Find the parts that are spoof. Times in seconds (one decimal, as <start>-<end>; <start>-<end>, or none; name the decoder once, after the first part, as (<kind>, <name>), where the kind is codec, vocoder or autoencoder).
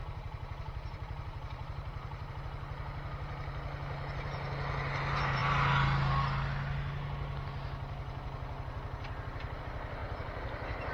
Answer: 0.0-2.3 (vocoder, BigVGAN v2); 10.0-10.9